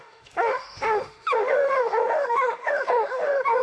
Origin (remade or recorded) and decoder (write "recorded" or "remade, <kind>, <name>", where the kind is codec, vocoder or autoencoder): remade, autoencoder, DAC-VAE